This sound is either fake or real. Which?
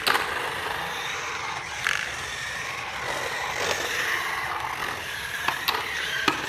real